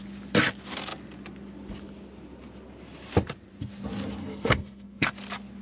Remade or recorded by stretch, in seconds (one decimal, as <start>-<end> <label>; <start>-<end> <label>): 0.0-4.2 recorded; 4.2-5.1 remade; 5.1-5.6 recorded